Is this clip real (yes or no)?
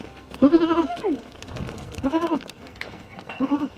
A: no